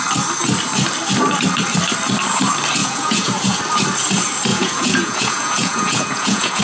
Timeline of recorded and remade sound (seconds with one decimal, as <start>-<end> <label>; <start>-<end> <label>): 0.0-2.8 recorded; 2.8-3.6 remade; 3.6-4.5 recorded; 4.5-6.6 remade